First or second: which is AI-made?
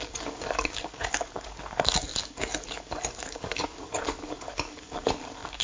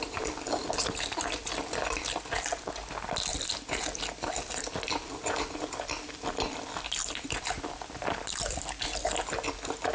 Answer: first